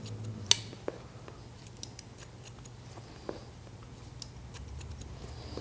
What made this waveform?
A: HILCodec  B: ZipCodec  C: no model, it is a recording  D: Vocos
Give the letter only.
C